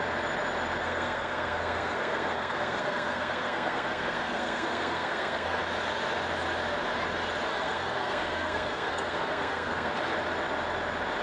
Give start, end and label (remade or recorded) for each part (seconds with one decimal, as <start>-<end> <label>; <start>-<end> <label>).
0.0-0.8 recorded; 0.8-5.6 remade; 5.6-7.5 recorded; 7.5-9.9 remade; 9.9-11.2 recorded